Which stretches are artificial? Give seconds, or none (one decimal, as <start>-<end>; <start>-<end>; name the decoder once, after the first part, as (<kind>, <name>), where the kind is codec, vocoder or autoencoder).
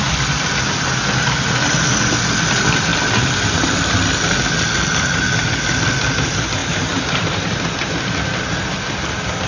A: 6.6-7.4 (vocoder, BigVGAN v2)